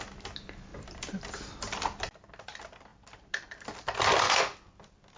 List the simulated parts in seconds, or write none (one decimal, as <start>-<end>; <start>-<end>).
0.7-1.5